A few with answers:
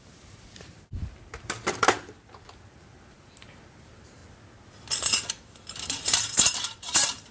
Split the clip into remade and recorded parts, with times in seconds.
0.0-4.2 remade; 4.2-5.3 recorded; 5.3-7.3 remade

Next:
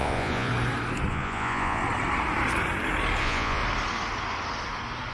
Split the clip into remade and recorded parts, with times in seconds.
0.0-0.5 remade; 0.5-1.1 recorded; 1.1-1.8 remade; 1.8-3.2 recorded; 3.2-3.6 remade; 3.6-5.1 recorded

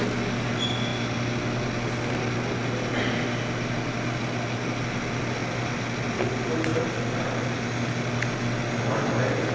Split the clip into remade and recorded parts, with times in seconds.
0.0-9.5 recorded

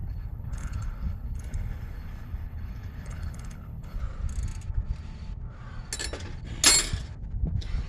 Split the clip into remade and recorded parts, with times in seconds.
0.0-4.0 remade; 4.0-7.9 recorded

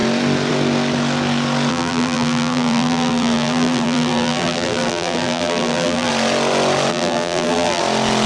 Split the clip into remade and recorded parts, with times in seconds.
0.0-1.7 recorded; 1.7-6.1 remade; 6.1-6.9 recorded; 6.9-7.8 remade; 7.8-8.3 recorded

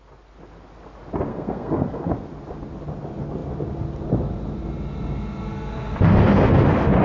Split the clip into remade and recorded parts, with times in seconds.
0.0-1.3 recorded; 1.3-2.1 remade; 2.1-7.0 recorded

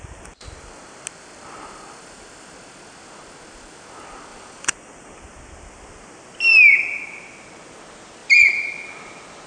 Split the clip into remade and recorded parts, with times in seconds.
0.0-4.3 recorded; 4.3-5.2 remade; 5.2-9.5 recorded

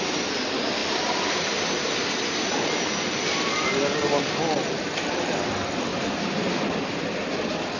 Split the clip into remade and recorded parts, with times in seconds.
0.0-0.8 recorded; 0.8-2.5 remade; 2.5-5.9 recorded; 5.9-6.6 remade; 6.6-7.8 recorded